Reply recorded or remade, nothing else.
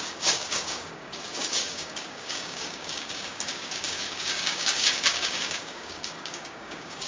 remade